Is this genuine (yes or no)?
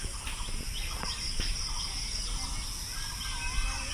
yes